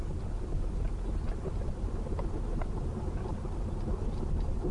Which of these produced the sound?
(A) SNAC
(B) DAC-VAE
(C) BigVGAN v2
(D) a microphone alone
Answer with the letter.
D